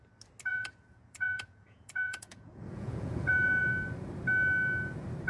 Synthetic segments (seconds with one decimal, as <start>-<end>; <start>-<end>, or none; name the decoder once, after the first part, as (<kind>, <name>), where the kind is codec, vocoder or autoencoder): 0.5-3.7 (vocoder, Vocos)